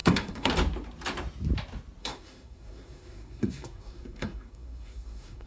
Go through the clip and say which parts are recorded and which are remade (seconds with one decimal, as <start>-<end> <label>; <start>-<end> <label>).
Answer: 0.0-0.5 remade; 0.5-2.0 recorded; 2.0-5.5 remade